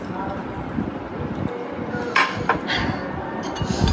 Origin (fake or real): real